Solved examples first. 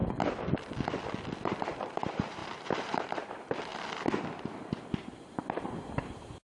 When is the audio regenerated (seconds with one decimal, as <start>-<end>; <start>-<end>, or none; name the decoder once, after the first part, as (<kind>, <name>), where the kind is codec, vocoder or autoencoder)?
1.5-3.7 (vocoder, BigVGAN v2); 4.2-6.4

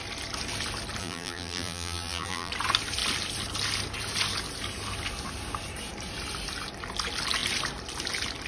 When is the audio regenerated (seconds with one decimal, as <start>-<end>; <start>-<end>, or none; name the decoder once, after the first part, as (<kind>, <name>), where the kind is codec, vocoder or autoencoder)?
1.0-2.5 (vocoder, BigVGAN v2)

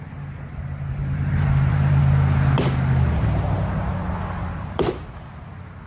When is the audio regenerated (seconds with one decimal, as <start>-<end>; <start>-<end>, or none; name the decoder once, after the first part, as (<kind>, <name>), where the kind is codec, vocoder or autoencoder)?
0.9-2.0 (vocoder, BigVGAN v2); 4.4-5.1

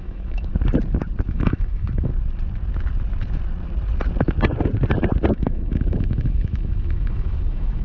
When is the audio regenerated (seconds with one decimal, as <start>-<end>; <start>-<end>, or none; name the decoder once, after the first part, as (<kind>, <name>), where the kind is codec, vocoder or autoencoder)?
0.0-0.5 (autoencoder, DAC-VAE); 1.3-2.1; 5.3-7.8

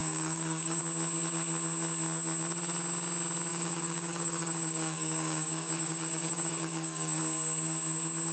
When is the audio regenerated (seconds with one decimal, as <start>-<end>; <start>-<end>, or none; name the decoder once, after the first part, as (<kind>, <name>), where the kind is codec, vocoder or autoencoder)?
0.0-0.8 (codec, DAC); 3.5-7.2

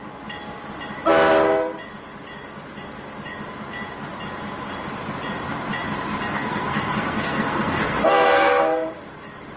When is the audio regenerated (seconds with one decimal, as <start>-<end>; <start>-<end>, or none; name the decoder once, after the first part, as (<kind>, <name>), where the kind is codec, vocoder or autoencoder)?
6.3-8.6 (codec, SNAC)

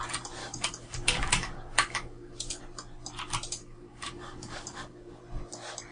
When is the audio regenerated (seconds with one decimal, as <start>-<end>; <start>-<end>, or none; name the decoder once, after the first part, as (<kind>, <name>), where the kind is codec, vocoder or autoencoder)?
0.4-2.6 (codec, DAC); 3.6-5.2